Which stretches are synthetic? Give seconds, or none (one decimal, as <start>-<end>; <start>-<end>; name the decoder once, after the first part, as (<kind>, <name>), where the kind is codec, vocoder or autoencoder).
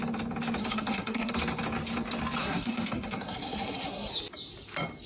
0.6-1.3 (codec, SNAC); 2.4-4.1